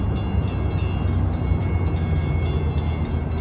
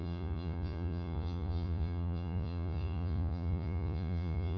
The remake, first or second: second